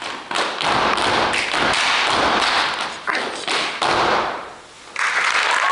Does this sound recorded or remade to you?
recorded